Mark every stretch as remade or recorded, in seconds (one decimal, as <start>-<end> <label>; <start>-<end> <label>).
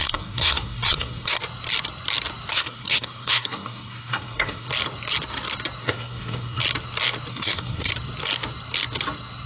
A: 0.0-1.4 remade; 1.4-2.5 recorded; 2.5-4.7 remade; 4.7-5.8 recorded; 5.8-6.6 remade; 6.6-7.3 recorded; 7.3-7.9 remade; 7.9-9.5 recorded